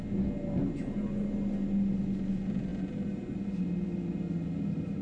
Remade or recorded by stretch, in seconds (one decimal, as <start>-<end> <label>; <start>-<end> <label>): 0.0-5.0 recorded